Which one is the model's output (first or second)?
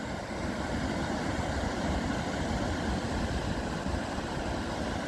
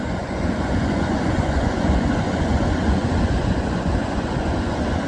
second